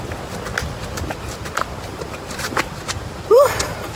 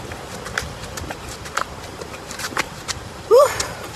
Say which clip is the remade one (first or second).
second